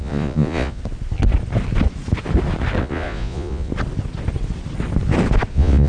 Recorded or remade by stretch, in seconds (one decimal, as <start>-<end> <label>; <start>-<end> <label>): 0.0-0.8 remade; 0.8-2.8 recorded; 2.8-3.7 remade; 3.7-5.5 recorded; 5.5-5.9 remade